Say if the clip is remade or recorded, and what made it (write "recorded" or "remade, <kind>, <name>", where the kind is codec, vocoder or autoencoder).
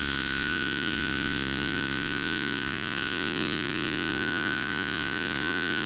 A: remade, vocoder, Vocos